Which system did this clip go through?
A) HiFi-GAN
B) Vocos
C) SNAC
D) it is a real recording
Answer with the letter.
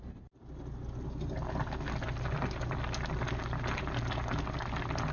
D